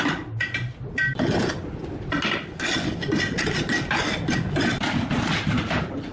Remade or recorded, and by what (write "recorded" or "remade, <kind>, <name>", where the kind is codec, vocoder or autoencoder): recorded